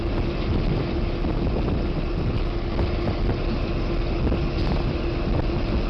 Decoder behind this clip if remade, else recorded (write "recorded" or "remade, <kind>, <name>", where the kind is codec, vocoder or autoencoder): recorded